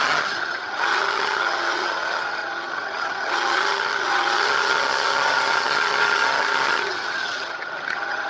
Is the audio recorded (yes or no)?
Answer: no